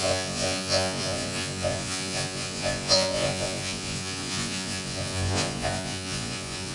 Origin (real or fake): fake